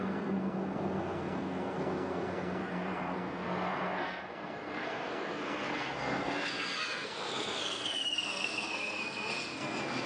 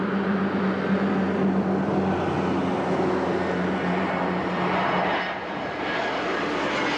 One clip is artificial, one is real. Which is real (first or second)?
second